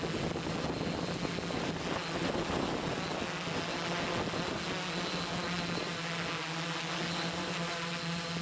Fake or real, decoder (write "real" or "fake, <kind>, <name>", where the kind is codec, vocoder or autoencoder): real